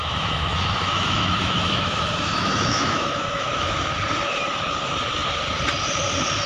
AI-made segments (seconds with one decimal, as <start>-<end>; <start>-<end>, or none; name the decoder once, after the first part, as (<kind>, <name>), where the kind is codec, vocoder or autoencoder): 0.0-3.9 (autoencoder, DAC-VAE)